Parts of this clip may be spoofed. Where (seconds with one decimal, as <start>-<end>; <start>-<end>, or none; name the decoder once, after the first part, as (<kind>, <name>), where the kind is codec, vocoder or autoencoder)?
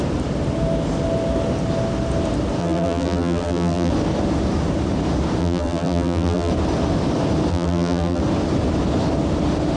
2.6-3.9 (vocoder, BigVGAN v2); 5.4-6.5; 7.5-8.2